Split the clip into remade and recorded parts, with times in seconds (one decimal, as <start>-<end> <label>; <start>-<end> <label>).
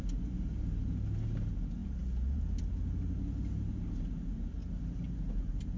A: 0.0-5.8 recorded